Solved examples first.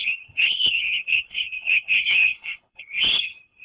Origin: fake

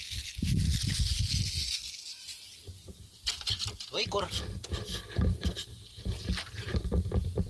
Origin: real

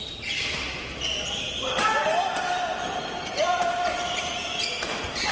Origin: real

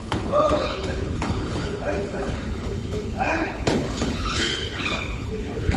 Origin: fake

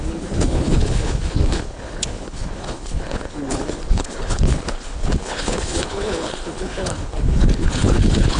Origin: fake